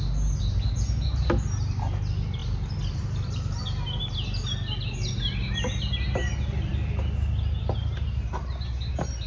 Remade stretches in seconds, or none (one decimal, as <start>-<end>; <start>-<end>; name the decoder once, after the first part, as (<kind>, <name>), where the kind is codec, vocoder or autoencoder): none